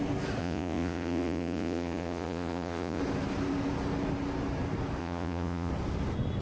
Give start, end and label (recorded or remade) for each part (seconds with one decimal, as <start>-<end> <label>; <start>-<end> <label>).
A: 0.0-0.4 recorded; 0.4-3.0 remade; 3.0-5.0 recorded; 5.0-5.7 remade; 5.7-6.4 recorded